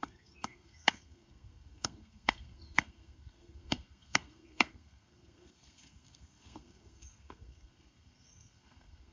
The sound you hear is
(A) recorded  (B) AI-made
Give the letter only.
B